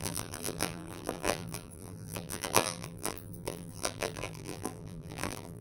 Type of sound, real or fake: fake